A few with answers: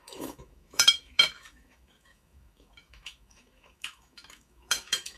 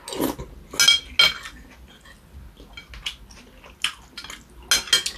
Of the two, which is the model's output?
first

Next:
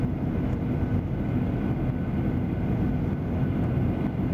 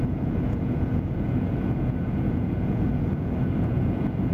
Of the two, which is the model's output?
second